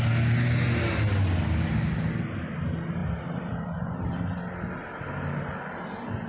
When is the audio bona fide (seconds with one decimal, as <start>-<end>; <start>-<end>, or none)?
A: 0.0-6.3